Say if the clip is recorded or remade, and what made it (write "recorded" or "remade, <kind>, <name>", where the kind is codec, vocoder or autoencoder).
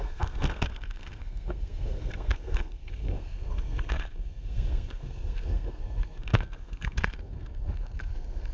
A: remade, codec, SNAC